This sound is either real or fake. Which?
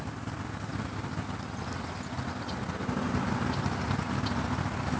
real